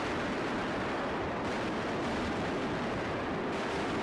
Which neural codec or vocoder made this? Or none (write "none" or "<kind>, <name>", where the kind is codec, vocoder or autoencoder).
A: vocoder, BigVGAN v2